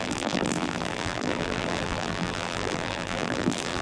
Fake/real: fake